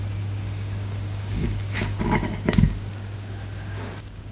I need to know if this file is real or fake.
fake